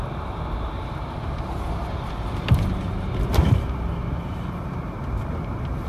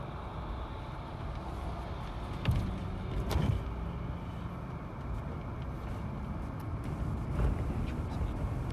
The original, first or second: second